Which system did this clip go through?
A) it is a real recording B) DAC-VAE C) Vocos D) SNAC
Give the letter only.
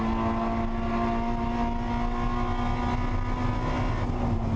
A